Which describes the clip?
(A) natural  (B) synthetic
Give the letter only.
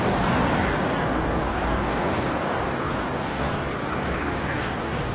B